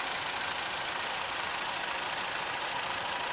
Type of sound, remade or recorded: recorded